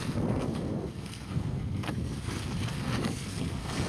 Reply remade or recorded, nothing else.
remade